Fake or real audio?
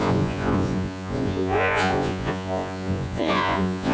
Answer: fake